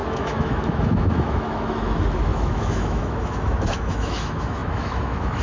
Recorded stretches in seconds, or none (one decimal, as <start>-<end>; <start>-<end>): none